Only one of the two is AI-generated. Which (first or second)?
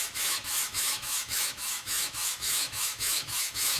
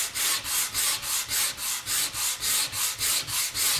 first